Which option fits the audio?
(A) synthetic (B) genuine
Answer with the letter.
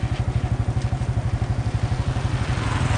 B